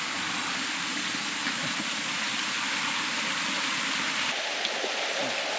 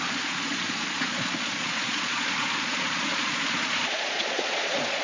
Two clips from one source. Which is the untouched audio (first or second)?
first